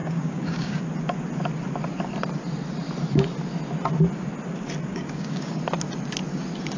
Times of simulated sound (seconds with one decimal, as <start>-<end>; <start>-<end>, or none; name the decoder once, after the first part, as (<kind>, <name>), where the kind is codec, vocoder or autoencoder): 0.0-0.8 (codec, DAC); 4.9-5.6

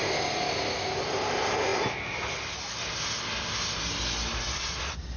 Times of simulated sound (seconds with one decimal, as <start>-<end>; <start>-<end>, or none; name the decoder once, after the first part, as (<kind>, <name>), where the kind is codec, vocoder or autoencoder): none